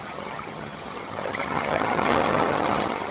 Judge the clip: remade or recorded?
remade